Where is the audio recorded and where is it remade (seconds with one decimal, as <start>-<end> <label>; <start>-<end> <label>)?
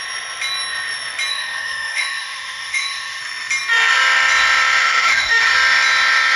0.0-1.3 recorded; 1.3-3.2 remade; 3.2-4.8 recorded; 4.8-5.4 remade; 5.4-6.4 recorded